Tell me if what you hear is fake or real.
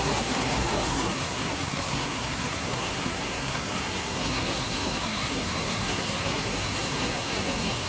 fake